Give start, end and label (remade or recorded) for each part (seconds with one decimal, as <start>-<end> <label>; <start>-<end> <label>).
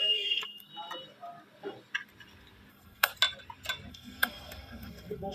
0.0-0.7 remade; 0.7-2.7 recorded; 2.7-3.1 remade; 3.1-3.9 recorded; 3.9-5.3 remade